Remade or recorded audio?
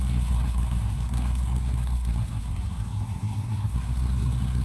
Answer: remade